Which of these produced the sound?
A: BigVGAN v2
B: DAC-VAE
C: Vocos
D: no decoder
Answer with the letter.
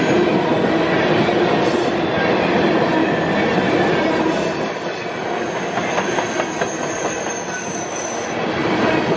D